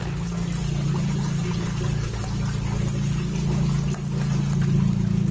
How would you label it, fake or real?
real